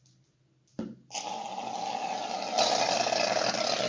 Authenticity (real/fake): real